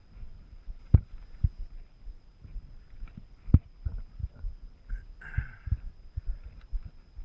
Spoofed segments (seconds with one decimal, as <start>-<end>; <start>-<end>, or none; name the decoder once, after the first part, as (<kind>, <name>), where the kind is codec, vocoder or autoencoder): 0.0-1.0 (vocoder, BigVGAN v2); 2.5-3.5; 4.2-5.9